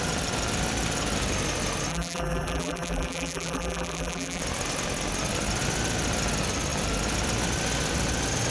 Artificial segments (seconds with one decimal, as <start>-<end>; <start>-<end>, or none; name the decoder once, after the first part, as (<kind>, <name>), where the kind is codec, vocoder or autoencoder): 1.9-4.4 (vocoder, BigVGAN v2)